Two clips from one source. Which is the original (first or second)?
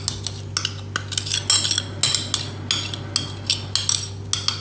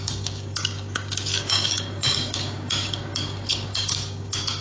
first